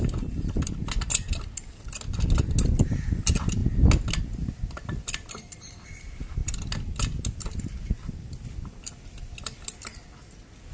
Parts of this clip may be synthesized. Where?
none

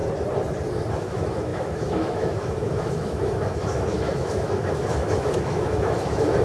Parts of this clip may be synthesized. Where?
0.9-6.4 (autoencoder, DAC-VAE)

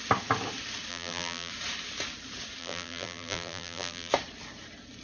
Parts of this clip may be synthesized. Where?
0.9-1.5 (vocoder, BigVGAN v2); 2.6-4.1